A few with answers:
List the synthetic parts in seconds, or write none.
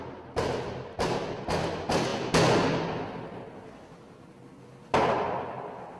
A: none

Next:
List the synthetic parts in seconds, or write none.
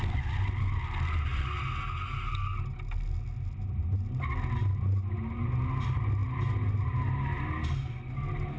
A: none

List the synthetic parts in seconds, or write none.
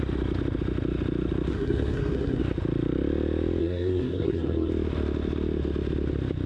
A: 1.5-2.4; 3.6-4.7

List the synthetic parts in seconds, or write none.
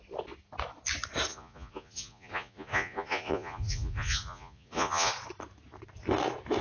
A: 1.3-5.1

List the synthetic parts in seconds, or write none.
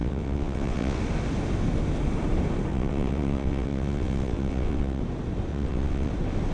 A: 0.0-1.0; 2.7-5.0; 5.5-6.1